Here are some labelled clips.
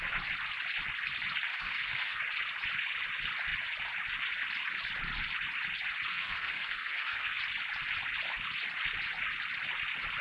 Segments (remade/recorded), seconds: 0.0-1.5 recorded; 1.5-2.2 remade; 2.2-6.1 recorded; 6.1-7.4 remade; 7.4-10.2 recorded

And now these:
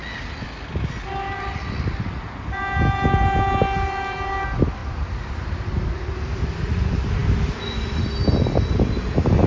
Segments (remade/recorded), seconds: 0.0-4.8 recorded; 4.8-5.7 remade; 5.7-7.2 recorded; 7.2-8.0 remade; 8.0-9.5 recorded

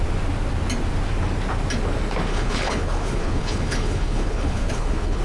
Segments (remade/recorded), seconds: 0.0-2.3 recorded; 2.3-5.2 remade

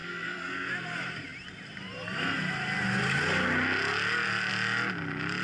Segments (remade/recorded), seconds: 0.0-0.7 remade; 0.7-5.4 recorded

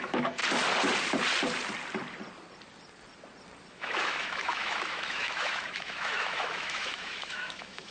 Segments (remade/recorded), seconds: 0.0-0.4 remade; 0.4-3.7 recorded; 3.7-7.9 remade

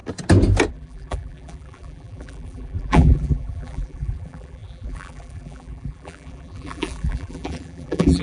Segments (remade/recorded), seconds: 0.0-0.7 recorded; 0.7-8.2 remade